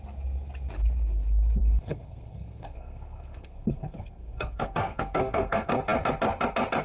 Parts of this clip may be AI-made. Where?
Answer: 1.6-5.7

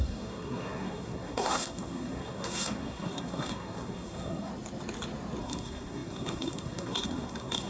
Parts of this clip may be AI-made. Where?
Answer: 0.0-4.5; 5.4-7.7